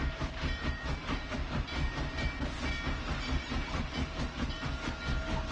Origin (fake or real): real